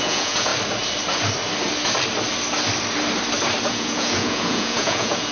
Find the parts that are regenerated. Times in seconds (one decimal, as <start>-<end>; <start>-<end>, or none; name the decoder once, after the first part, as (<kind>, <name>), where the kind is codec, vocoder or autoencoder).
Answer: 0.0-0.5 (vocoder, Vocos); 3.7-5.3